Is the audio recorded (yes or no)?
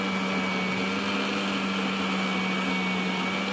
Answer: yes